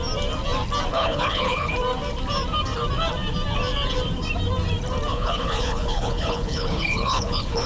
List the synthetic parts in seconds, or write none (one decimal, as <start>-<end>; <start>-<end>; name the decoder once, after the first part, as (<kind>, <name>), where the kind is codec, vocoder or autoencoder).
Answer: 0.9-1.7 (codec, HILCodec); 5.1-7.7